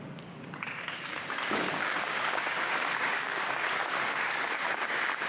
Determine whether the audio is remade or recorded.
remade